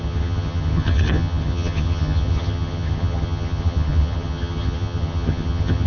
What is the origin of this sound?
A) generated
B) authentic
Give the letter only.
A